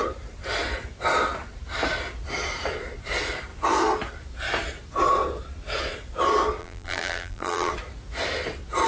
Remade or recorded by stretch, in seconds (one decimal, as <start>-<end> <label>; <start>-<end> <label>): 0.0-6.6 recorded; 6.6-7.7 remade; 7.7-8.9 recorded